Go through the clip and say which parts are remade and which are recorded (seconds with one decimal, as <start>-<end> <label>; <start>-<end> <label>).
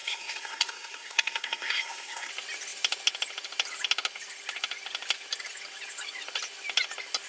0.0-2.3 remade; 2.3-7.3 recorded